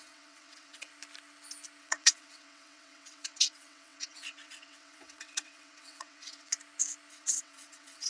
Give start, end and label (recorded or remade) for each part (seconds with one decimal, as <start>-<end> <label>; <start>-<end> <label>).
0.0-0.9 remade; 0.9-1.8 recorded; 1.8-6.5 remade; 6.5-7.1 recorded; 7.1-8.1 remade